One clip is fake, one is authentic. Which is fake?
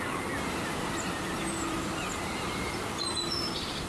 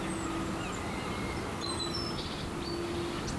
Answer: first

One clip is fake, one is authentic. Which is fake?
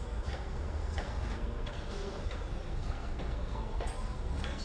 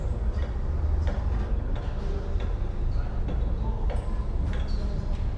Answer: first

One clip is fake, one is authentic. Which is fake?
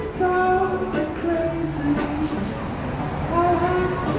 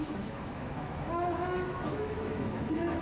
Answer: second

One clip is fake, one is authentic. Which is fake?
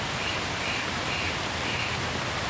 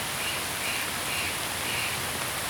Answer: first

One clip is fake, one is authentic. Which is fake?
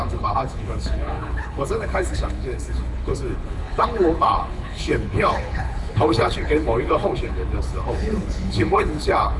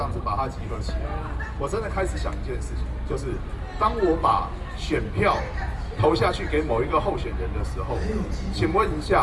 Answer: first